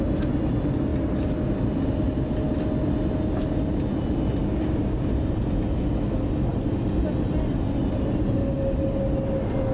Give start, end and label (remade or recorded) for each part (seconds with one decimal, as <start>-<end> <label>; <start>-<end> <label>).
0.0-4.4 recorded; 4.4-5.1 remade; 5.1-9.7 recorded